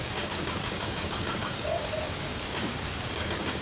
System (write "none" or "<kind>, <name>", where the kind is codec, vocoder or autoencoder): codec, DAC